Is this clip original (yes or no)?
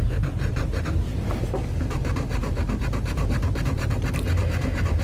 no